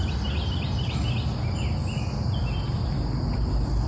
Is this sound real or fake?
real